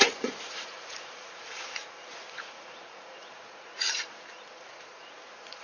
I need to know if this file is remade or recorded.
remade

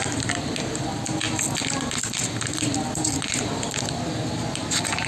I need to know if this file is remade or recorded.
recorded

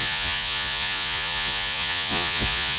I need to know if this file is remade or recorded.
remade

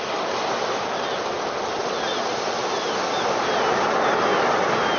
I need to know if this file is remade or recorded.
recorded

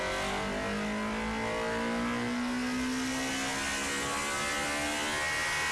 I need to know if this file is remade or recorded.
recorded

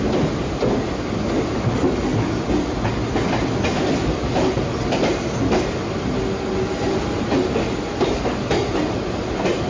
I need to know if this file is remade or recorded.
recorded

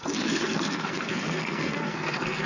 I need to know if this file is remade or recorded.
remade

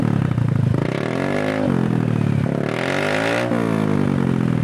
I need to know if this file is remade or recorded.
recorded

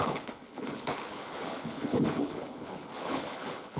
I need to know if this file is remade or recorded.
remade